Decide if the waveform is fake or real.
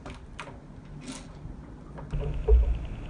real